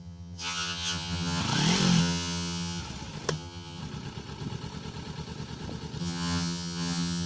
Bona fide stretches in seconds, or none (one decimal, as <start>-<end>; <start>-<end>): 1.4-2.0; 2.8-3.3; 3.8-6.0